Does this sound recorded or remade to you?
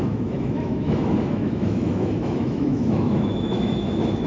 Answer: remade